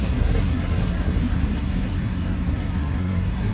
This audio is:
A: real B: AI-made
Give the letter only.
B